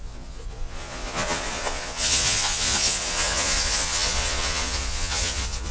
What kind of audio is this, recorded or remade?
remade